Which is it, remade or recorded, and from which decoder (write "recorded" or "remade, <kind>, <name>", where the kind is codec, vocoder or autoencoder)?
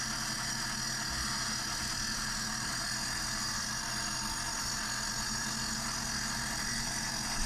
recorded